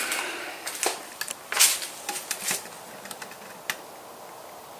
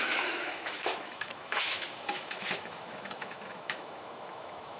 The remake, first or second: second